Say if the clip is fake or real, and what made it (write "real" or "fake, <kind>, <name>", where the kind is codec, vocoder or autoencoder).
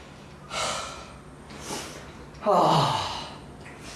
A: real